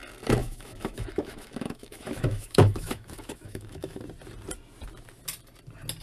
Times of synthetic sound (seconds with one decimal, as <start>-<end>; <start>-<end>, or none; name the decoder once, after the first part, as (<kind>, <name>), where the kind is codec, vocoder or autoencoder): 0.4-4.0 (autoencoder, DAC-VAE)